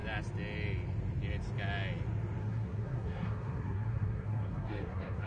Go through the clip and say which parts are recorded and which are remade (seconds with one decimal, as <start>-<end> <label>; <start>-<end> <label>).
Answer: 0.0-2.4 recorded; 2.4-5.3 remade